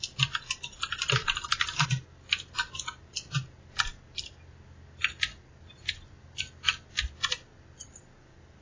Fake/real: real